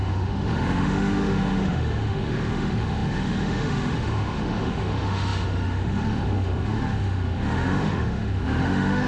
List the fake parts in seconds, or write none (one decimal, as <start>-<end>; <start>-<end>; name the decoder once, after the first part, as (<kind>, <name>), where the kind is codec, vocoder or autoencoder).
0.0-9.1 (autoencoder, DAC-VAE)